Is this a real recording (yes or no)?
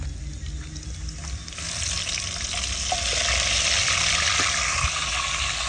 yes